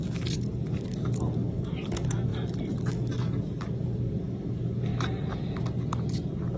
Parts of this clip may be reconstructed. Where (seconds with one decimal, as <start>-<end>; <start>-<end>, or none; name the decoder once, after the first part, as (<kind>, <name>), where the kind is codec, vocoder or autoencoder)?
0.0-4.9 (codec, DAC)